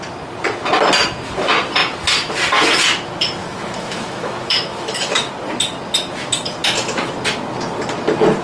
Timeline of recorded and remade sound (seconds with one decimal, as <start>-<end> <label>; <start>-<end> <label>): 0.0-3.4 recorded; 3.4-5.3 remade; 5.3-8.4 recorded